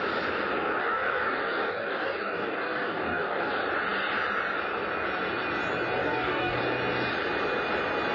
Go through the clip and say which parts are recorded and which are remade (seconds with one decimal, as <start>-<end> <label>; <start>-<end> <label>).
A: 0.0-0.8 recorded; 0.8-3.5 remade; 3.5-6.0 recorded; 6.0-6.6 remade; 6.6-8.1 recorded